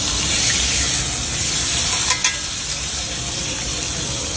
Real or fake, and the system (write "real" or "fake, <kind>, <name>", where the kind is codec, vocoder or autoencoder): real